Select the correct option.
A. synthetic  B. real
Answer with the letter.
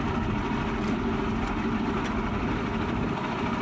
B